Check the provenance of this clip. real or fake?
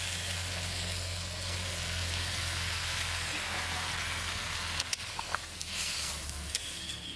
fake